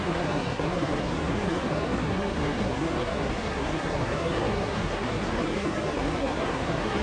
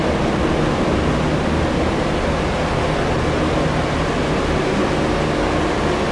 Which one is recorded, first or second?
second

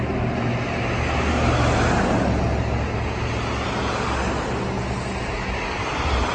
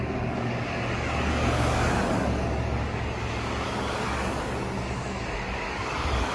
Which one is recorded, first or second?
first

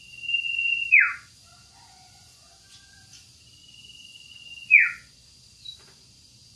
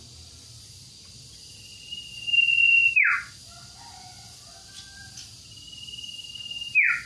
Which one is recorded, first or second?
second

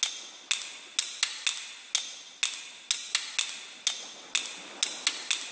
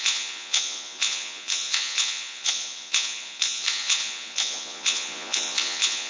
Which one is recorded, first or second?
first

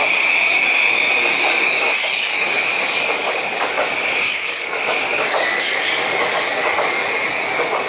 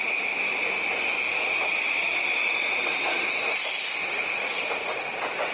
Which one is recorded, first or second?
second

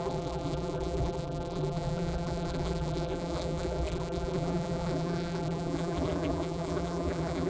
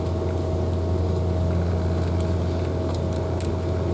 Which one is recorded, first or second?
second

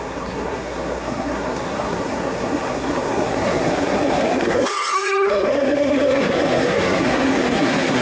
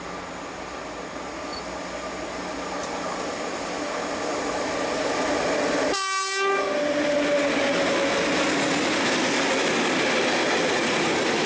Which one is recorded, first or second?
second